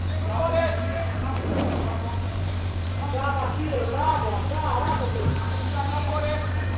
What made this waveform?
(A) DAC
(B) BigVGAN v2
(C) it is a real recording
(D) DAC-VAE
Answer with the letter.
B